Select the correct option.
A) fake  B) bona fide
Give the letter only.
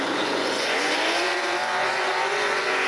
A